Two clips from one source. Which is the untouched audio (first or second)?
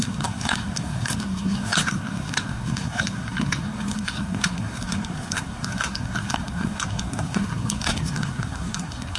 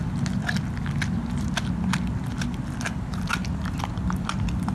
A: second